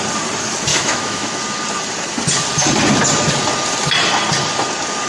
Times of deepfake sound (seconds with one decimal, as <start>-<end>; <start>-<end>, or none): 0.7-1.4